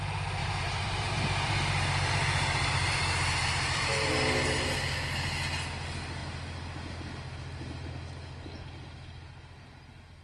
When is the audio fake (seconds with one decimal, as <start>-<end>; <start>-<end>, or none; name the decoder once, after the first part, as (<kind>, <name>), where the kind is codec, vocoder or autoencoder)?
0.4-4.1 (vocoder, BigVGAN v2)